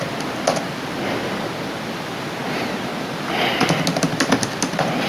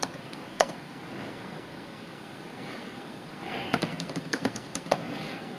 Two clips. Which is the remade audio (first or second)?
second